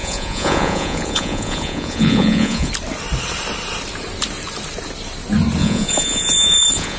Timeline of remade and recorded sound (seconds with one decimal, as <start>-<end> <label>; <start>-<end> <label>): 0.0-2.7 remade; 2.7-5.6 recorded; 5.6-7.0 remade